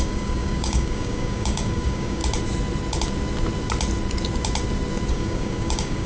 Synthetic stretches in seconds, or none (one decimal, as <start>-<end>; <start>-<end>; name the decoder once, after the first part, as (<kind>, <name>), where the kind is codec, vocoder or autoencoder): 0.0-2.2 (codec, DAC); 5.1-6.1